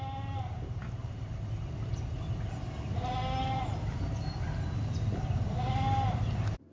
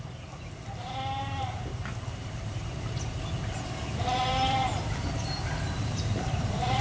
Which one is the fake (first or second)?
second